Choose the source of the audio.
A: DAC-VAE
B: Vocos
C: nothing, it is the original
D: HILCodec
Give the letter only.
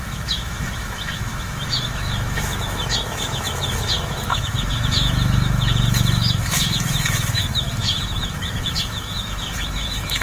A